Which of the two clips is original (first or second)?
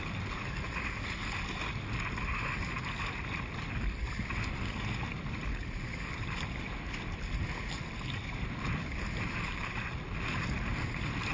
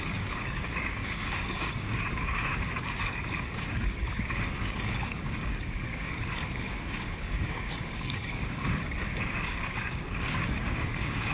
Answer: first